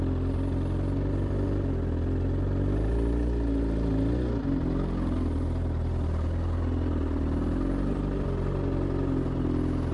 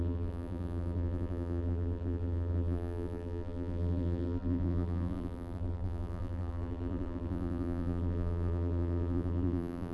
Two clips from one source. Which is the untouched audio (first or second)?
first